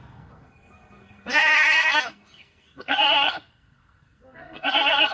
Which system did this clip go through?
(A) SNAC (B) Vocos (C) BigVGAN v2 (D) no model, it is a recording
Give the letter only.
A